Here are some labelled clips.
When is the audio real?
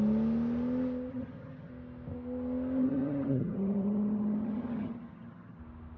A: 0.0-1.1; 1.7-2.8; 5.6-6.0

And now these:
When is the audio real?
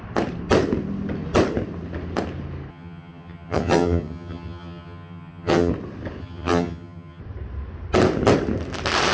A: 0.0-2.7; 5.7-6.2; 7.2-9.1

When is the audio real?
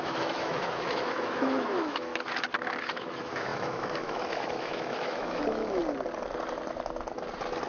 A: 2.1-2.8; 5.8-7.7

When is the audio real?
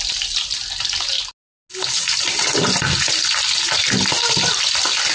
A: 0.0-5.1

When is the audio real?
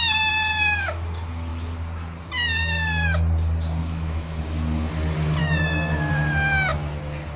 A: 0.0-3.8; 4.4-5.4; 6.1-7.4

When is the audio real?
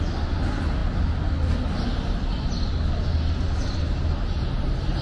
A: 0.0-5.0